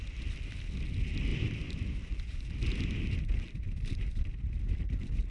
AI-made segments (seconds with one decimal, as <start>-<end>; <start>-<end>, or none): 1.3-4.2